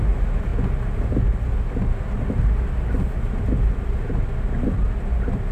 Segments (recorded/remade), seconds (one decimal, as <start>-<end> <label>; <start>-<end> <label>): 0.0-5.5 recorded